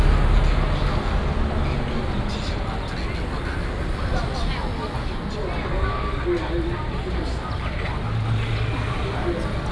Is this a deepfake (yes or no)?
no